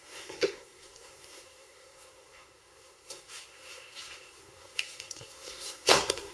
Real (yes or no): no